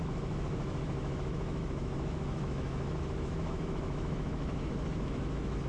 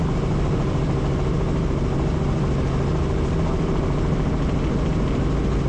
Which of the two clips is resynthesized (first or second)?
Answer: first